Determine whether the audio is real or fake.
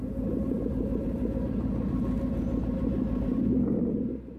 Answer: fake